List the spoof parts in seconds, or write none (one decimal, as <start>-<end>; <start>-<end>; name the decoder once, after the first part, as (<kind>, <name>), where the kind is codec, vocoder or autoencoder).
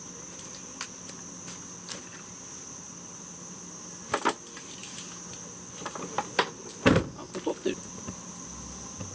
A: none